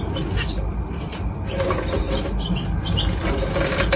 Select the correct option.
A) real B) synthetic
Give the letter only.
A